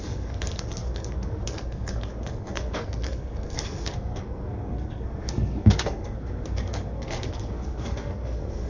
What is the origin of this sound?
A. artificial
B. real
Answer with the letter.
A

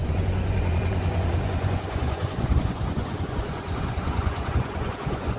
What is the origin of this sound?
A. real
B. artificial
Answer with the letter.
B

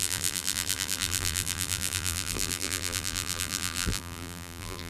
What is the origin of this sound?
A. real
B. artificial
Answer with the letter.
B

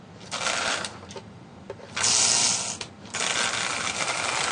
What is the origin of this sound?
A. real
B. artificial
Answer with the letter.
B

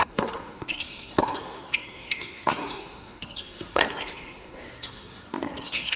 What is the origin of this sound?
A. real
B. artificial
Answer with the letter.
B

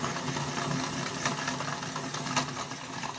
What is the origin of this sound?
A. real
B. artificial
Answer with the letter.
A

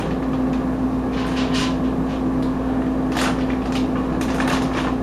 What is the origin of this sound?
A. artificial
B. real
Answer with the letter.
B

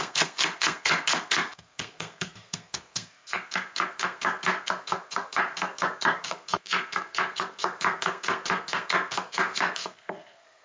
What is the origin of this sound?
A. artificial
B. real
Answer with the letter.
A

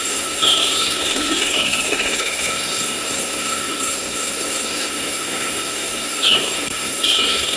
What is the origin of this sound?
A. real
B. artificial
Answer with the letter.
B